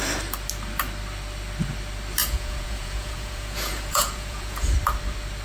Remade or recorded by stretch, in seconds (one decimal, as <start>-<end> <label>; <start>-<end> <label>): 0.0-2.2 recorded; 2.2-4.7 remade; 4.7-5.4 recorded